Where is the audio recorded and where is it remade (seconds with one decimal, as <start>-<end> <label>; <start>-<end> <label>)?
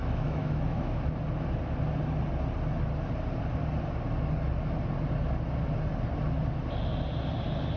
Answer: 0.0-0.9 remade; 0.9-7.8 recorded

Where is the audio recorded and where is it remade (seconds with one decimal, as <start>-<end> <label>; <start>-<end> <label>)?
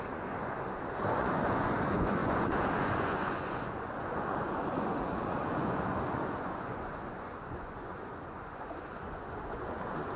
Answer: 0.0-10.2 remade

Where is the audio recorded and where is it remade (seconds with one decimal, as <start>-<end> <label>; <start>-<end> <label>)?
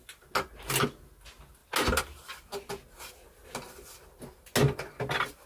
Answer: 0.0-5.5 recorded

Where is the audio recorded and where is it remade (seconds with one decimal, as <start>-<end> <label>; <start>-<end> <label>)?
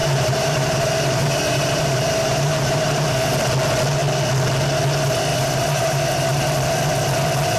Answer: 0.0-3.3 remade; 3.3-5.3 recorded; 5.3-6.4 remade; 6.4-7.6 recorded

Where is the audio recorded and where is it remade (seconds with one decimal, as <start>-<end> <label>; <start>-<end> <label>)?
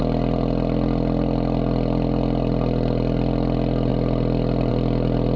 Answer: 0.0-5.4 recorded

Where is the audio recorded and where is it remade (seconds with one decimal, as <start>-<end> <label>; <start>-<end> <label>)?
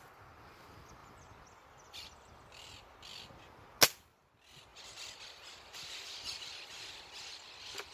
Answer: 0.0-7.9 recorded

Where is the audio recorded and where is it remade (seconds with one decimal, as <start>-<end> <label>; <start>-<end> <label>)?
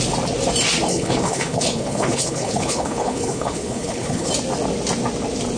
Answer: 0.0-0.9 recorded; 0.9-4.3 remade; 4.3-5.6 recorded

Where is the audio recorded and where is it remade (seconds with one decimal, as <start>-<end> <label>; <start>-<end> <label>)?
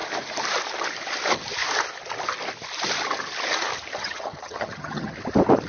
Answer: 0.0-4.0 recorded; 4.0-5.1 remade; 5.1-5.7 recorded